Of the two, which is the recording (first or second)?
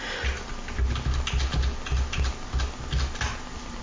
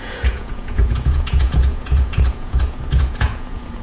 first